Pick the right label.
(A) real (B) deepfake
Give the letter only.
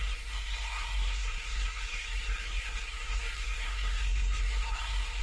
B